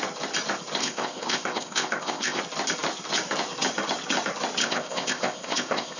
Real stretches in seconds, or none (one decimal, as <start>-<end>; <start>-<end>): 0.0-0.8; 2.4-4.6